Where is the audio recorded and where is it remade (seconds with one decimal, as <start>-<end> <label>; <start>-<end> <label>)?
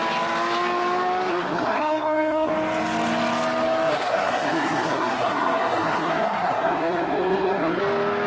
0.0-1.3 recorded; 1.3-2.5 remade; 2.5-3.9 recorded; 3.9-7.8 remade; 7.8-8.3 recorded